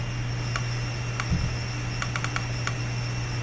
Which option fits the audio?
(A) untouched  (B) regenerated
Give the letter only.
A